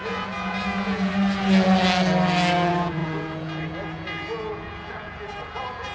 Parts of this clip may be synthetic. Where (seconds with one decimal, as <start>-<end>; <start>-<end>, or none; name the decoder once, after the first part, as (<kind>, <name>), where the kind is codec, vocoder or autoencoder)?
0.0-1.1 (vocoder, Vocos); 2.5-5.9